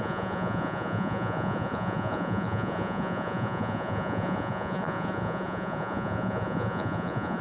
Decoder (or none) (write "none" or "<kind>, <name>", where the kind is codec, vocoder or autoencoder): vocoder, Vocos